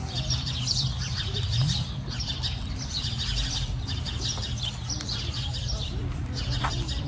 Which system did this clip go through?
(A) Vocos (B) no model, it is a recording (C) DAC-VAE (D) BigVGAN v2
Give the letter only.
D